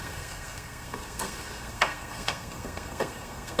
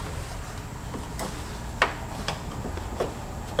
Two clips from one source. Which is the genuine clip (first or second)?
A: second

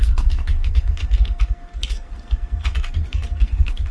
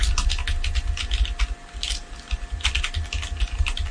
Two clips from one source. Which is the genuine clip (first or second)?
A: second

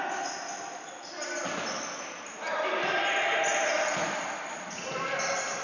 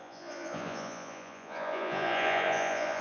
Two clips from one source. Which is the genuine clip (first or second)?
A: first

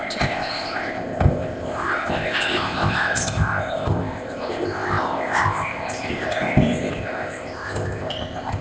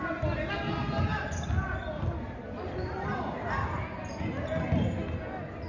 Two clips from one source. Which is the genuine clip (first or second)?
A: second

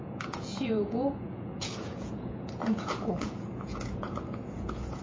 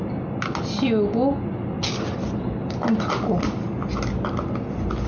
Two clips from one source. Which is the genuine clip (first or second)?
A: second